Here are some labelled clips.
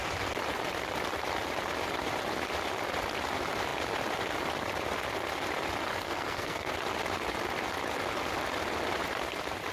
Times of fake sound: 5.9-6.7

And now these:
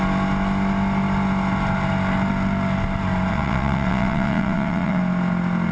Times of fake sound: 3.3-5.0

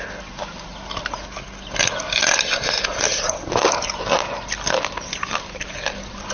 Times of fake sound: none

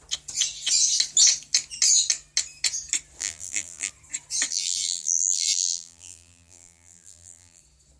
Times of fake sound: 3.2-3.9; 4.5-7.6